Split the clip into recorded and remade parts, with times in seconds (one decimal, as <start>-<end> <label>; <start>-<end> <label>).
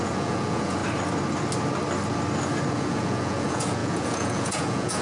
0.0-0.8 remade; 0.8-2.7 recorded; 2.7-5.0 remade